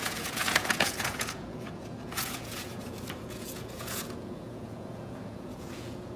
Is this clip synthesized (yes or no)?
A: yes